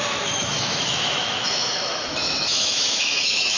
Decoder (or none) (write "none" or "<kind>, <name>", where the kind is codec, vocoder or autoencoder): autoencoder, DAC-VAE